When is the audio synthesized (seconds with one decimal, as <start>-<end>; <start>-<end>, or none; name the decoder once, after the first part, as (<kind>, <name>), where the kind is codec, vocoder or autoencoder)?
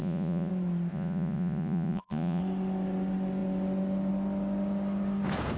0.0-0.5 (vocoder, Vocos); 0.9-2.4